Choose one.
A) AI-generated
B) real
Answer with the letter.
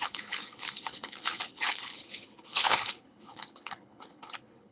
A